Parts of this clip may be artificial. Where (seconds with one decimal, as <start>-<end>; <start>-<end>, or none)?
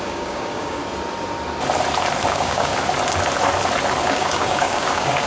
0.0-0.8; 2.3-2.7; 4.0-5.3